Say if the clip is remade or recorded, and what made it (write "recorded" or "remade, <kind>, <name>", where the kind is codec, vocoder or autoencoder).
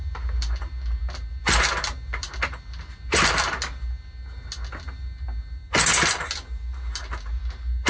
recorded